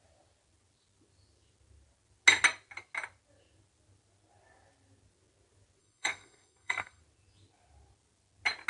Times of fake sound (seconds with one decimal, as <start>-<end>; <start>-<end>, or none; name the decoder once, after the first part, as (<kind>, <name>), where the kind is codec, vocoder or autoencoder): 5.8-7.0 (codec, SNAC)